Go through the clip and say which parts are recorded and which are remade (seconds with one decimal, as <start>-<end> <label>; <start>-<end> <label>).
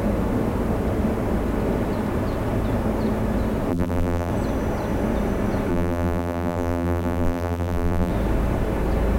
0.0-3.7 recorded; 3.7-4.3 remade; 4.3-5.7 recorded; 5.7-8.1 remade; 8.1-9.2 recorded